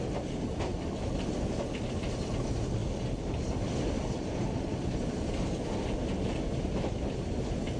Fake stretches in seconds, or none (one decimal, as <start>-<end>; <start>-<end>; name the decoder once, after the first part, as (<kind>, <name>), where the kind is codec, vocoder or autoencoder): none